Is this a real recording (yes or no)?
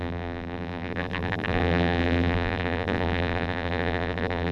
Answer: no